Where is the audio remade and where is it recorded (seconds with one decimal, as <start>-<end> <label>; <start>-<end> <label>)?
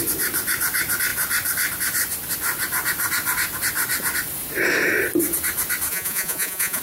0.0-5.9 recorded; 5.9-6.8 remade